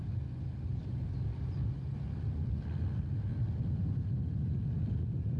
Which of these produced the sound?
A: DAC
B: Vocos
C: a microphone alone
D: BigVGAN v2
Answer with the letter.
C